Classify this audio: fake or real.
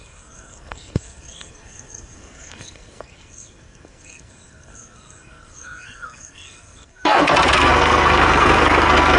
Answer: fake